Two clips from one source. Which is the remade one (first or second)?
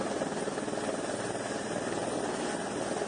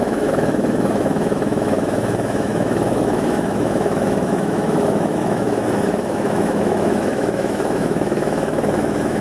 second